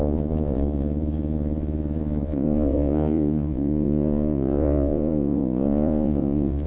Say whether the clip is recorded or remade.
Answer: remade